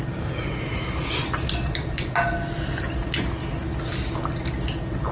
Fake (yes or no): no